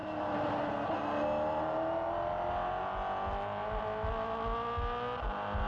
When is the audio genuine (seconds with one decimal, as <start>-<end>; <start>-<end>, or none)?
0.0-5.7